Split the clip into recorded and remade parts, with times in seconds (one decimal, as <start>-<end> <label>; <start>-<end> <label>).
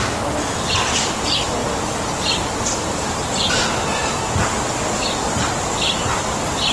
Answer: 0.0-6.7 recorded